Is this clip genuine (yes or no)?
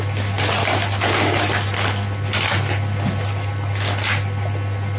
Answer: yes